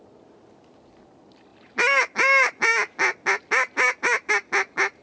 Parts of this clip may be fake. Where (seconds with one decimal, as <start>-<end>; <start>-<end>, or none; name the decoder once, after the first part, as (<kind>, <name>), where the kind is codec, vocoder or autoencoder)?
none